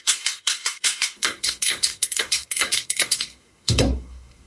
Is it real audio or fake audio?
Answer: fake